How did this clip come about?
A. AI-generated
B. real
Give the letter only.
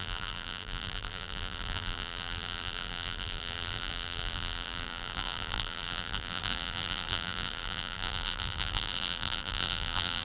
A